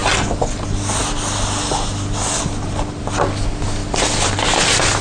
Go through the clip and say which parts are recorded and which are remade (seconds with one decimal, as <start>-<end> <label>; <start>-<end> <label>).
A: 0.0-5.0 recorded

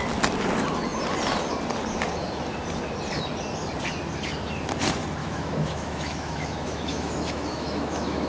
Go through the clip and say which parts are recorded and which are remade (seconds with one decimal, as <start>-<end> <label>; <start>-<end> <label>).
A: 0.0-5.2 recorded; 5.2-8.3 remade

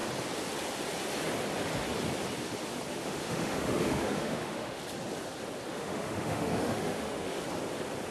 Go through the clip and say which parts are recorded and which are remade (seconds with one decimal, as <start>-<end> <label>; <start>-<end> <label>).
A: 0.0-2.9 recorded; 2.9-4.8 remade; 4.8-5.7 recorded; 5.7-7.4 remade; 7.4-8.1 recorded

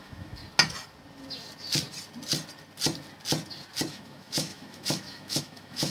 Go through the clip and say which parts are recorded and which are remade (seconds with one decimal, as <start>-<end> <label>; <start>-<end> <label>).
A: 0.0-0.4 remade; 0.4-3.9 recorded; 3.9-5.9 remade

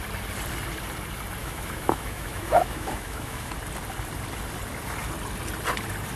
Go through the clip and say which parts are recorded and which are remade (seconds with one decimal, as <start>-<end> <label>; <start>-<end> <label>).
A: 0.0-1.4 recorded; 1.4-3.5 remade; 3.5-6.2 recorded

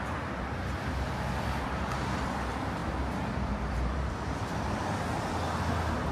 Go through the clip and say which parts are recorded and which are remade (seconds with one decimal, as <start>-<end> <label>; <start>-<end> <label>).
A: 0.0-6.1 recorded